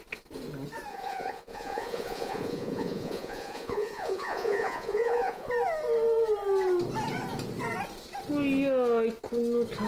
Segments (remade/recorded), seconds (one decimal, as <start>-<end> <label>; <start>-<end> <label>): 0.0-0.9 recorded; 0.9-5.5 remade; 5.5-9.9 recorded